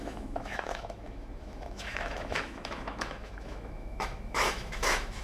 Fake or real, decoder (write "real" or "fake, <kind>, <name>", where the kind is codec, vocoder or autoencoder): fake, autoencoder, DAC-VAE